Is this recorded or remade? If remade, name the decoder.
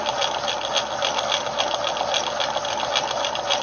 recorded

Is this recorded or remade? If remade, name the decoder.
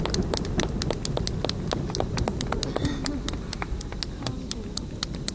recorded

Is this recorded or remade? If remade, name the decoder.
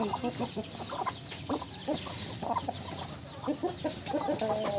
recorded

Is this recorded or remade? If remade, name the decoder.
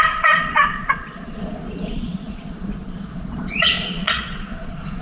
remade, vocoder, Vocos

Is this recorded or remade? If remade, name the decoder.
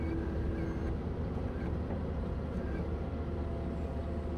recorded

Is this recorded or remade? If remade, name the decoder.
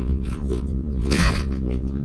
remade, vocoder, Vocos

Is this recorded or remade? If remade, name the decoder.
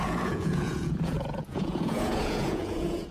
remade, vocoder, Vocos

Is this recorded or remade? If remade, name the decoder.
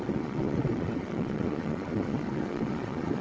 remade, vocoder, Vocos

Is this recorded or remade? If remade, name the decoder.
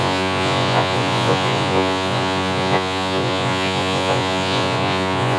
remade, vocoder, Vocos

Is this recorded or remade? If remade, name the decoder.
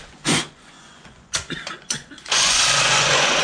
remade, vocoder, Vocos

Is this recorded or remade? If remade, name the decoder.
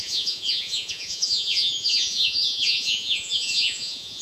remade, vocoder, Vocos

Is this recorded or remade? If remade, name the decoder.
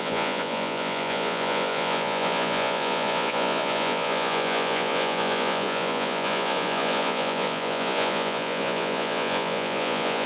remade, vocoder, Vocos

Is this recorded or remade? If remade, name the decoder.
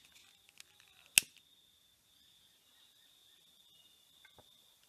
recorded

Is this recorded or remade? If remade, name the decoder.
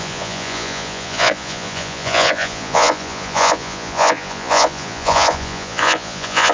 remade, vocoder, Vocos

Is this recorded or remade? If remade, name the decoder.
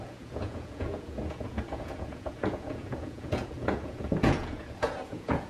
remade, vocoder, Vocos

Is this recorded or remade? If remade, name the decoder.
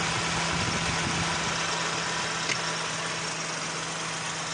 recorded